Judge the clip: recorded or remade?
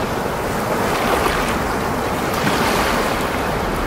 recorded